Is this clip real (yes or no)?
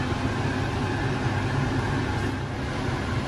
yes